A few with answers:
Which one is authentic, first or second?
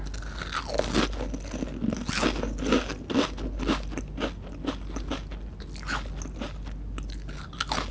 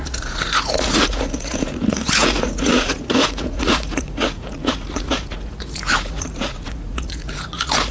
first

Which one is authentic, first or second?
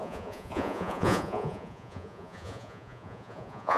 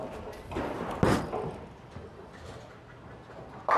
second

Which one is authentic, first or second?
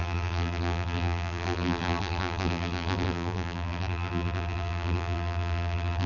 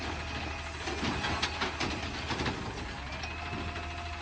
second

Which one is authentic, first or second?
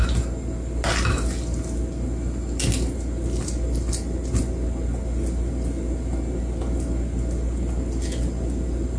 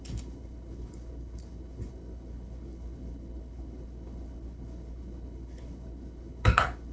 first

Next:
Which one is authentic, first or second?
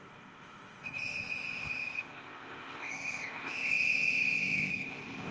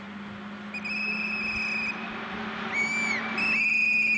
second